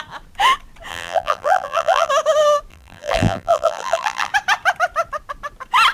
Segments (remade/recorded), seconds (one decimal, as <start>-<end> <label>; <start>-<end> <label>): 0.0-0.9 recorded; 0.9-2.1 remade; 2.1-2.7 recorded; 2.7-4.3 remade; 4.3-5.9 recorded